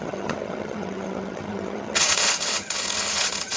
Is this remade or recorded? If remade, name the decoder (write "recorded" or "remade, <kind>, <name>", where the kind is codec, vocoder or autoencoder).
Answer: remade, vocoder, HiFi-GAN